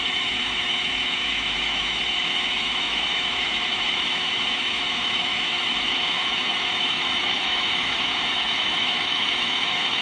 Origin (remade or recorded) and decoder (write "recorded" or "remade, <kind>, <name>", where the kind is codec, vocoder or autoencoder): remade, autoencoder, DAC-VAE